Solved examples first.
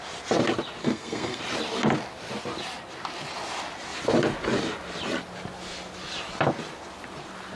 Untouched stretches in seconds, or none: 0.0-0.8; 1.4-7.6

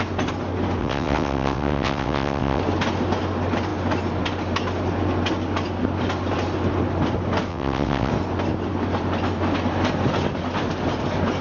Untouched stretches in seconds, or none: 0.0-0.8; 2.6-7.5; 8.1-11.4

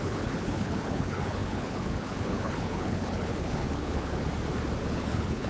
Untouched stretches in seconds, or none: 4.3-4.8

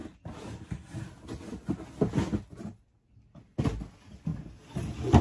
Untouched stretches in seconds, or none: 0.0-5.2

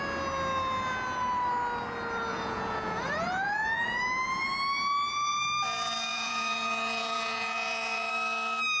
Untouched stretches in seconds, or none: 0.0-2.3; 4.0-6.1; 8.1-8.8

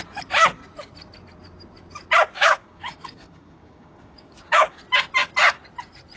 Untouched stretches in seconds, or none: 0.0-2.4; 4.8-6.2